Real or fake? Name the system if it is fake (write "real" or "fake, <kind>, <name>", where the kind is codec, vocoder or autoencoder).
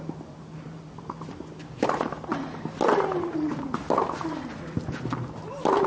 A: real